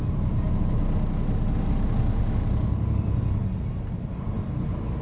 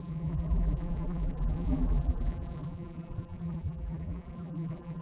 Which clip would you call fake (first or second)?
second